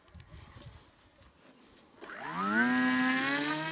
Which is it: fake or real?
real